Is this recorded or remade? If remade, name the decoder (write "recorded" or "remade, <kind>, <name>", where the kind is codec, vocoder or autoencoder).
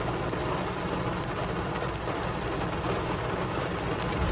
recorded